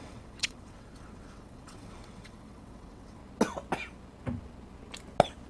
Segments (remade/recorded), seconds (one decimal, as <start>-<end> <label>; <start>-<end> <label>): 0.0-3.2 remade; 3.2-5.5 recorded